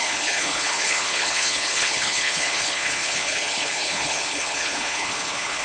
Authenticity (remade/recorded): remade